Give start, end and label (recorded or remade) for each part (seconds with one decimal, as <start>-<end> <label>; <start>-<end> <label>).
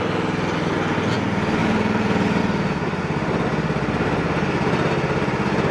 0.0-1.6 recorded; 1.6-2.4 remade; 2.4-5.7 recorded